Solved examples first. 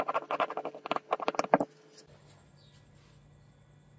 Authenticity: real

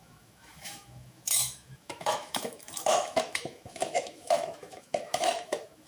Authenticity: fake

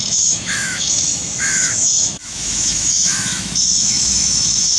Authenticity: fake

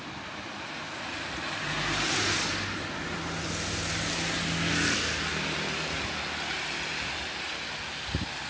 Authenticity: real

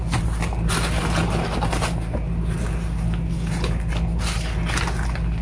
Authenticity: real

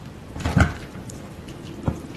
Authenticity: real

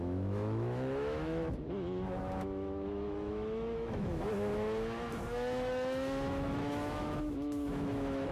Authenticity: fake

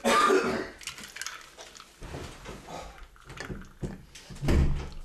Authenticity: real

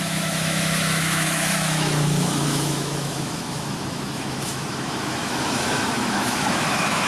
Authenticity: fake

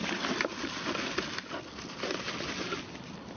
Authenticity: real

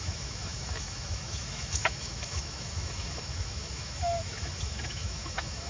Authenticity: fake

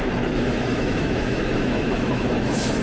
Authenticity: fake